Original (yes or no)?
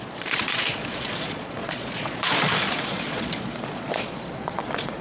no